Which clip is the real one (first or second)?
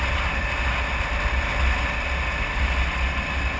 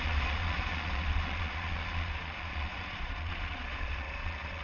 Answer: first